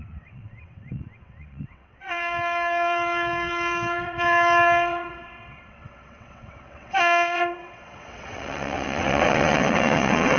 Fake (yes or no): yes